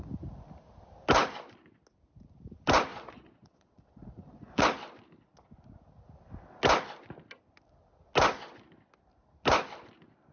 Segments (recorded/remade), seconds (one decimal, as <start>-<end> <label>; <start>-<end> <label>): 0.0-2.9 recorded; 2.9-4.6 remade; 4.6-10.3 recorded